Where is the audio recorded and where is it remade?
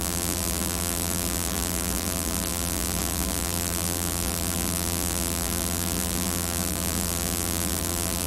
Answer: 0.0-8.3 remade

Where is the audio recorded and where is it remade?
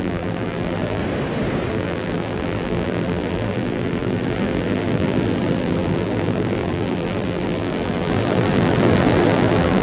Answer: 0.0-1.0 remade; 1.0-1.7 recorded; 1.7-9.8 remade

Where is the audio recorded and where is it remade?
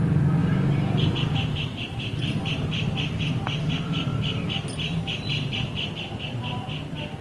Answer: 0.0-0.4 recorded; 0.4-3.1 remade; 3.1-7.2 recorded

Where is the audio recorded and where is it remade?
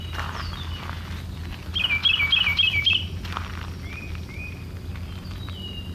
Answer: 0.0-5.9 recorded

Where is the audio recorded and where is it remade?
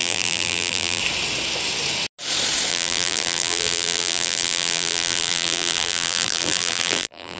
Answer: 0.0-1.0 remade; 1.0-2.7 recorded; 2.7-7.4 remade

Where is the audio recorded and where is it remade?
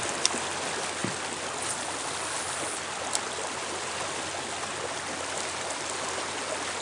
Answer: 0.0-6.8 recorded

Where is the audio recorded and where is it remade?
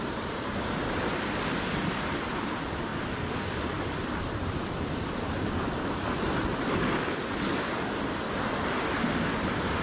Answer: 0.0-2.9 remade; 2.9-4.2 recorded; 4.2-6.9 remade; 6.9-8.2 recorded; 8.2-9.8 remade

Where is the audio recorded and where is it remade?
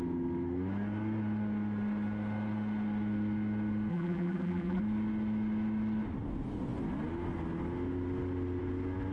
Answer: 0.0-3.9 recorded; 3.9-4.8 remade; 4.8-9.1 recorded